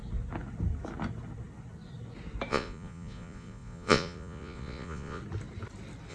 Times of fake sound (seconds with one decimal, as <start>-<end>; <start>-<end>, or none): 2.5-5.2